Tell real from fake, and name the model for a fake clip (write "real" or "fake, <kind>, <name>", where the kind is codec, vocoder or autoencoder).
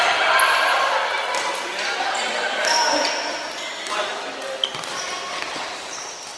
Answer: real